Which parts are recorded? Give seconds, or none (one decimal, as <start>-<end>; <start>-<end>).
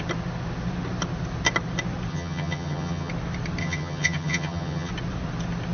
0.0-2.1; 3.1-3.6; 4.9-5.7